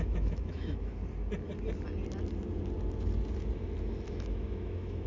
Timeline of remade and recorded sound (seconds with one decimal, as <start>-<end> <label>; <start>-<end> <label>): 0.0-1.0 remade; 1.0-4.1 recorded; 4.1-5.1 remade